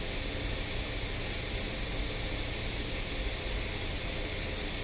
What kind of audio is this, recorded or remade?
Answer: recorded